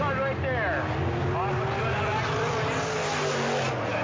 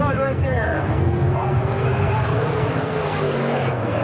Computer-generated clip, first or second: second